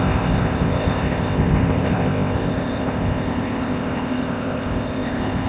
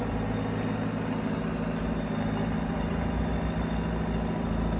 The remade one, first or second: first